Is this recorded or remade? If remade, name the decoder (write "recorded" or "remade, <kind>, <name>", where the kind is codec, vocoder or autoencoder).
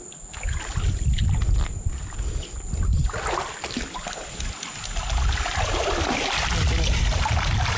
recorded